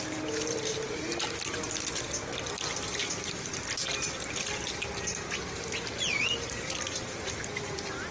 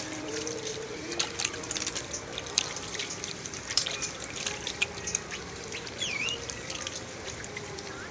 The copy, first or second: second